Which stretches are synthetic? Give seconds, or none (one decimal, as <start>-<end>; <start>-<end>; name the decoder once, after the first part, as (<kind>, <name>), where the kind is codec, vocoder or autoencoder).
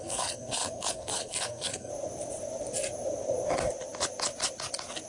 0.0-1.9 (codec, SNAC)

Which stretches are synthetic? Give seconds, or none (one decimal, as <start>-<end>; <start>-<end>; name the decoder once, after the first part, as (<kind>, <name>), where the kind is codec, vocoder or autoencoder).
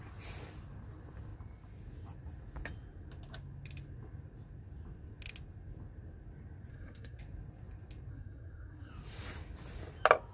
6.7-7.2 (codec, SNAC); 8.1-8.9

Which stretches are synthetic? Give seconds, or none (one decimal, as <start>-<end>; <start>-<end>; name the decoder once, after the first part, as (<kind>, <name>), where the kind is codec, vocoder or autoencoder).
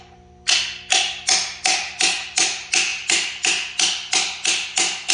none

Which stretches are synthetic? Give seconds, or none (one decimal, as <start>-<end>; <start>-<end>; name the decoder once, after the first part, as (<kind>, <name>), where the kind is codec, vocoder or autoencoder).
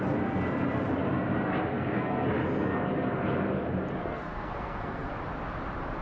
1.7-2.3 (codec, SNAC); 4.0-5.1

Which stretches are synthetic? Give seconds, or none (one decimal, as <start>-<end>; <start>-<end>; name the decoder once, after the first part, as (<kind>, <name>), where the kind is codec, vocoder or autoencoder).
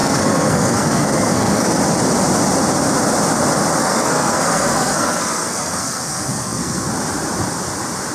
0.0-1.8 (codec, SNAC); 3.8-6.9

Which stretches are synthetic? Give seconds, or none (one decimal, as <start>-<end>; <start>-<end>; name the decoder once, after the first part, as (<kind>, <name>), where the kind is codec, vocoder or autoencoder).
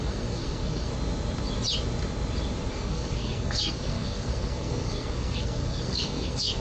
0.0-0.9 (codec, SNAC); 2.7-6.6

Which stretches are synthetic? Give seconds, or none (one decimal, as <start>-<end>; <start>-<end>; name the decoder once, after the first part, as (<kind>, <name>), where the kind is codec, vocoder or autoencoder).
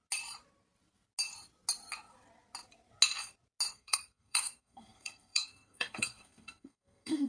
3.7-7.3 (codec, SNAC)